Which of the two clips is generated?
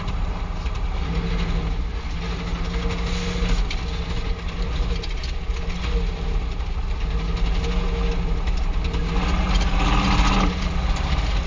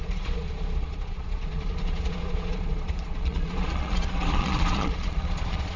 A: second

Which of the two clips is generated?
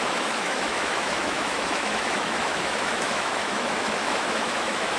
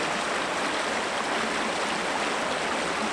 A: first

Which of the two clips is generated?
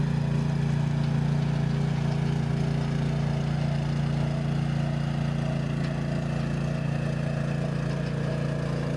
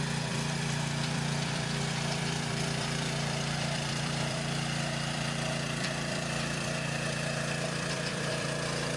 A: second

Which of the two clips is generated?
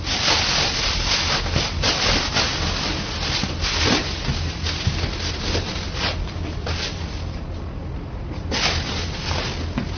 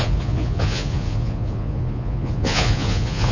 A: second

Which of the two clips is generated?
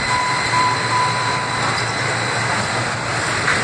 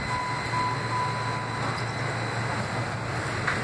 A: first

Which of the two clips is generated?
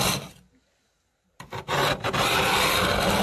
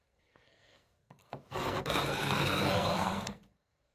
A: second